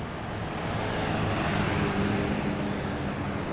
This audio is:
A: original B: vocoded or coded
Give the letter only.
A